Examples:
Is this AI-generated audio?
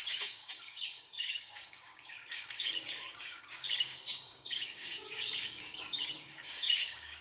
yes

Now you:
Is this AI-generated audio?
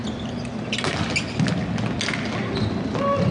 no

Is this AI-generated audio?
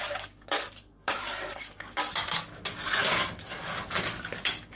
yes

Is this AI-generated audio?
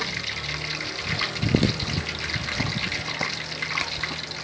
no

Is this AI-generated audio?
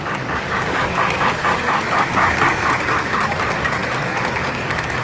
yes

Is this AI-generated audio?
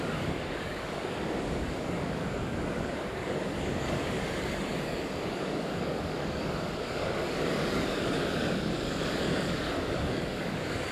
yes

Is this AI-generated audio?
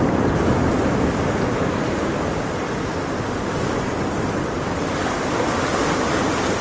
no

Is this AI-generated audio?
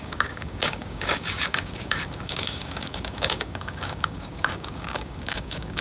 yes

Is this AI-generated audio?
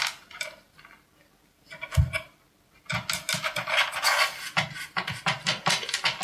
no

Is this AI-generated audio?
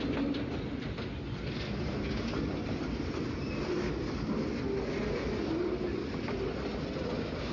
no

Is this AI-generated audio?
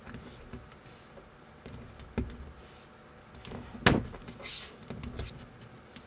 no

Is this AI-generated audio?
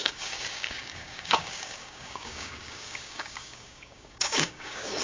yes